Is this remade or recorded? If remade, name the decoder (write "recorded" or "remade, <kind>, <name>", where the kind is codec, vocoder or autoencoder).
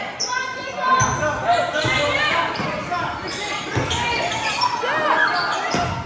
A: recorded